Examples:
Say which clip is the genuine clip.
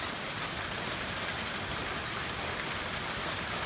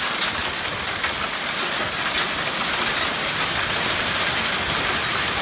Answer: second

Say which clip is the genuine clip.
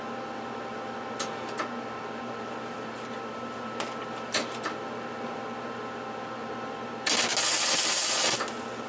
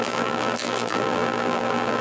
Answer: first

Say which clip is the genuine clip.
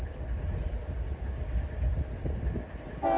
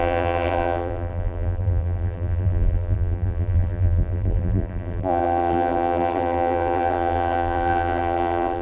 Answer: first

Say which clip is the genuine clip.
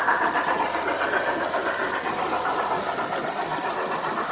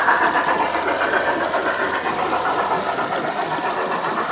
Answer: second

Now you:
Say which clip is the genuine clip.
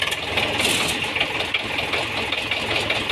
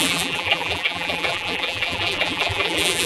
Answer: first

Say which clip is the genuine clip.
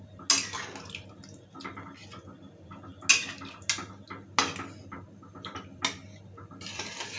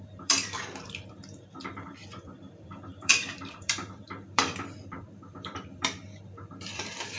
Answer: first